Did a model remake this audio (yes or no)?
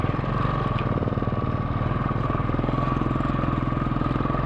no